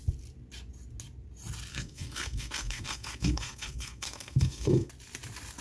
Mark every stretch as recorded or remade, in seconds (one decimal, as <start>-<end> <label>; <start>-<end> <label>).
0.0-1.7 recorded; 1.7-4.9 remade; 4.9-5.6 recorded